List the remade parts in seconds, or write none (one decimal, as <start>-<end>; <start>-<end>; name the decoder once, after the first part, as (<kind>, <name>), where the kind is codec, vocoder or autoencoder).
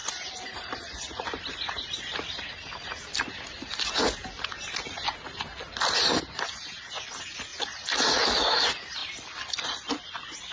0.0-1.9 (vocoder, BigVGAN v2); 9.0-9.6